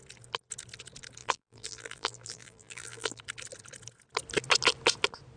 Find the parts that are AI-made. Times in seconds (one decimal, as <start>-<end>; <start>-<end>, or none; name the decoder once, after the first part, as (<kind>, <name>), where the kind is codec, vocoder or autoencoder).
1.2-3.2 (vocoder, BigVGAN v2)